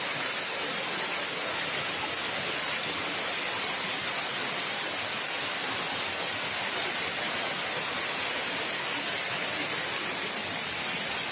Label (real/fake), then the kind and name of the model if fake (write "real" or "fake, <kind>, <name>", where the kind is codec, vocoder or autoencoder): real